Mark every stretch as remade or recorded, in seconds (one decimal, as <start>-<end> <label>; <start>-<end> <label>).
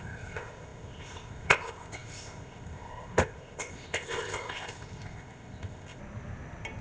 0.0-6.0 remade; 6.0-6.8 recorded